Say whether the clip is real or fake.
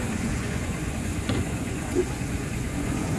fake